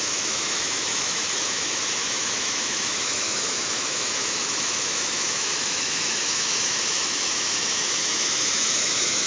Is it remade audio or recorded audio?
remade